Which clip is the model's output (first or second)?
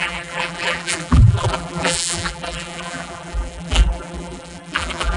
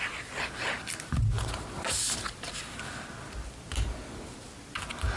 first